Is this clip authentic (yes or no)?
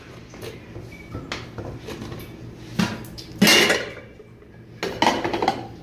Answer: yes